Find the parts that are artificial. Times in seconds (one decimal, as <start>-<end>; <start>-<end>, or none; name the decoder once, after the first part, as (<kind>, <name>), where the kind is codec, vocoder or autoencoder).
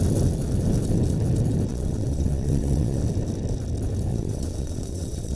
1.7-3.0 (vocoder, WaveNeXt); 4.1-5.4